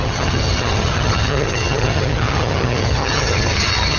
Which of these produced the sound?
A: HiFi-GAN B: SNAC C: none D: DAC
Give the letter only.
A